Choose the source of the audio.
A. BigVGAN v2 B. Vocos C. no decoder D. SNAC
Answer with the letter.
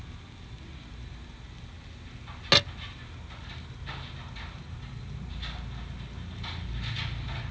C